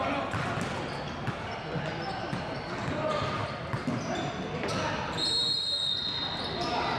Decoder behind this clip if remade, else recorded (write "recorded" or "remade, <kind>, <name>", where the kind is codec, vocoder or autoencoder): recorded